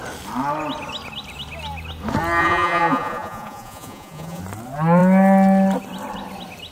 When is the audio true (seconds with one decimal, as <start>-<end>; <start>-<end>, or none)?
0.0-2.4; 4.4-6.7